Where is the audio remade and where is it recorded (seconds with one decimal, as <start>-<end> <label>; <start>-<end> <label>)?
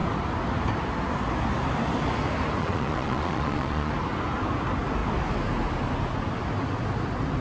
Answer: 0.0-2.6 recorded; 2.6-3.9 remade; 3.9-7.4 recorded